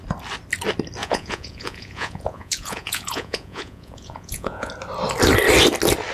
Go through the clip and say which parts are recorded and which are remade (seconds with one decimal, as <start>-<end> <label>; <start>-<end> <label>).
0.0-1.0 recorded; 1.0-4.7 remade; 4.7-6.1 recorded